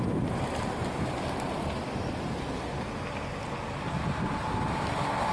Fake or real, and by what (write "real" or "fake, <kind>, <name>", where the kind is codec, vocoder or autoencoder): real